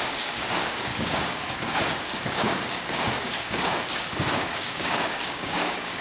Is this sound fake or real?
fake